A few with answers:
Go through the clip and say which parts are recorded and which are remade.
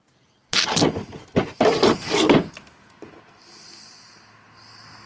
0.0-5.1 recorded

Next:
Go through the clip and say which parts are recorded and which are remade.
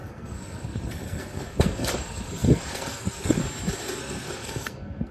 0.0-3.4 remade; 3.4-4.0 recorded; 4.0-5.1 remade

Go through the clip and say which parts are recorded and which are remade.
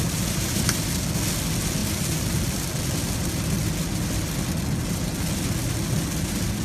0.0-6.6 recorded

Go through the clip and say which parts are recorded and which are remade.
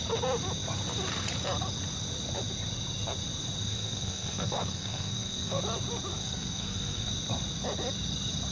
0.0-3.7 recorded; 3.7-5.6 remade; 5.6-6.1 recorded; 6.1-7.1 remade; 7.1-8.5 recorded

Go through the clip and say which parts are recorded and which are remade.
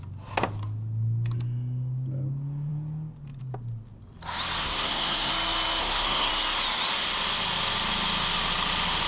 0.0-4.6 recorded; 4.6-5.3 remade; 5.3-5.8 recorded; 5.8-6.3 remade; 6.3-9.1 recorded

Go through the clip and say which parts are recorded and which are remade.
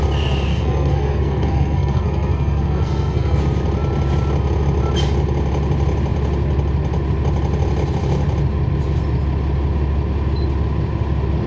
0.0-0.5 recorded; 0.5-3.4 remade; 3.4-11.5 recorded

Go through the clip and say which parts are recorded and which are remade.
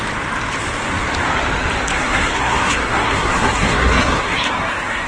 0.0-1.9 recorded; 1.9-5.1 remade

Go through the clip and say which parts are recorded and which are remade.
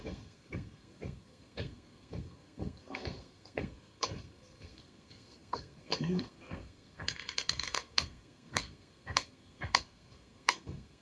0.0-11.0 remade